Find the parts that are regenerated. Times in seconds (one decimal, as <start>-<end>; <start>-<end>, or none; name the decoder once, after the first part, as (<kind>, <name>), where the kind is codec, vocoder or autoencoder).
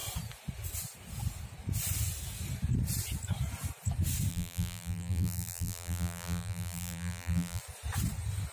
4.3-7.6 (vocoder, BigVGAN v2)